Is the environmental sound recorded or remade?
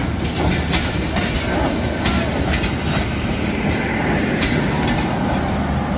recorded